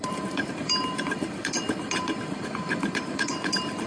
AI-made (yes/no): yes